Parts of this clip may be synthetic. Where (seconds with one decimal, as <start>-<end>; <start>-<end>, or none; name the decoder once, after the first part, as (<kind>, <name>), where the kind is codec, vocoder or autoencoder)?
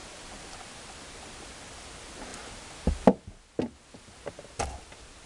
none